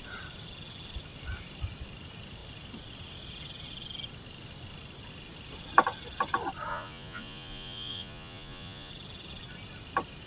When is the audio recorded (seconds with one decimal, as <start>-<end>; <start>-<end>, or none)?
0.0-6.7; 8.9-10.3